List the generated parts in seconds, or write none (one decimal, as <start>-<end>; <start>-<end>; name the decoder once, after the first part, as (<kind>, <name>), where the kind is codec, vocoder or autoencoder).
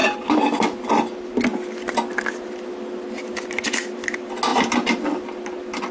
none